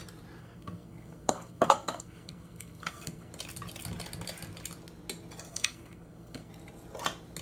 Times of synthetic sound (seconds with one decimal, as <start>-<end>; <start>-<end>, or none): 0.4-3.3; 5.5-6.5